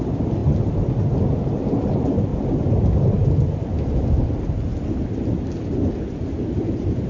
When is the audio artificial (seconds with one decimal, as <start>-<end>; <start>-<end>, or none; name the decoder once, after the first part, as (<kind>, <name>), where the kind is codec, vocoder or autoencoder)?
0.0-0.4 (vocoder, BigVGAN v2); 1.2-2.3; 6.6-7.1